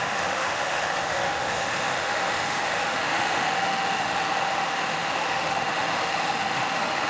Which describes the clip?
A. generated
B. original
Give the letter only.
A